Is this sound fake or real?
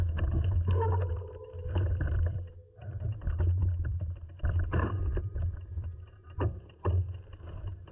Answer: fake